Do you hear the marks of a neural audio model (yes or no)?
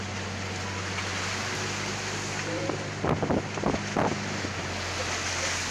no